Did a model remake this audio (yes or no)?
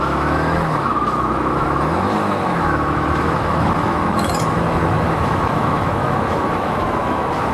yes